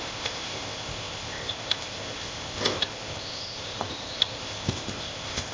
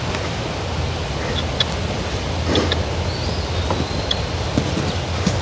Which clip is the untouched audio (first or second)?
second